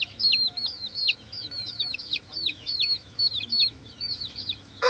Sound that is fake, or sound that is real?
fake